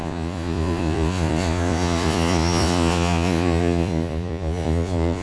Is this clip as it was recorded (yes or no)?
no